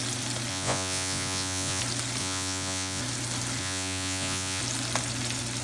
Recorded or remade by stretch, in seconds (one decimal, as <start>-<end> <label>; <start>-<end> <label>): 0.0-0.5 recorded; 0.5-1.8 remade; 1.8-2.2 recorded; 2.2-3.0 remade; 3.0-3.6 recorded; 3.6-4.6 remade; 4.6-5.6 recorded